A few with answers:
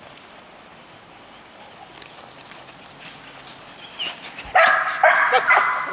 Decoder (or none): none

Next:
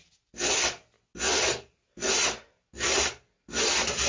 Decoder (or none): none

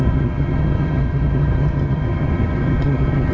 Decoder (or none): vocoder, HiFi-GAN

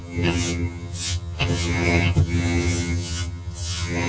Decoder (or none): vocoder, HiFi-GAN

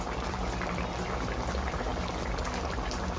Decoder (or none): none